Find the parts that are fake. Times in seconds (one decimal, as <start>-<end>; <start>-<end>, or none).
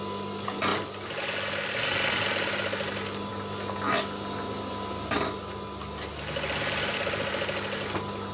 none